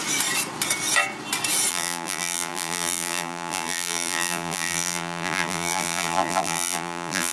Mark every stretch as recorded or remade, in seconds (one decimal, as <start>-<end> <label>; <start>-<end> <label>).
0.0-1.7 recorded; 1.7-7.3 remade